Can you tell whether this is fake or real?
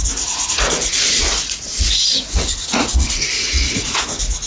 fake